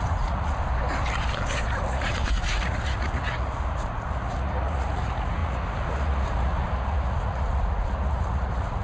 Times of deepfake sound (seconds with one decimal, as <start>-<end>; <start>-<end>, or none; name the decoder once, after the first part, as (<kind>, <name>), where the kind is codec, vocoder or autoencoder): 0.0-0.6 (vocoder, Vocos); 1.8-8.8